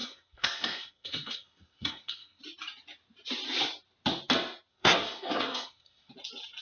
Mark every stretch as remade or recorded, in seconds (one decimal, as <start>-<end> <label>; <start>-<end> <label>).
0.0-2.4 remade; 2.4-4.7 recorded; 4.7-6.1 remade; 6.1-6.6 recorded